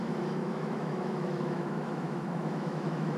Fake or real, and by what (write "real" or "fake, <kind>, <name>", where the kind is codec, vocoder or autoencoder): fake, autoencoder, DAC-VAE